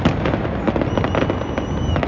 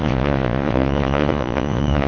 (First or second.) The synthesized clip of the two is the second